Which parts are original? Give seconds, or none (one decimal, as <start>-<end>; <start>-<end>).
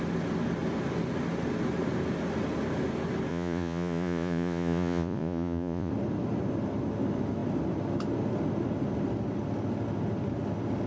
0.0-3.3; 5.9-10.9